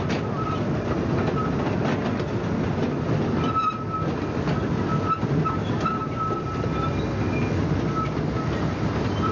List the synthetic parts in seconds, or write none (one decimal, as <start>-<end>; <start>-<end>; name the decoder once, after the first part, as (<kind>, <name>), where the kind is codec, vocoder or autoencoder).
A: none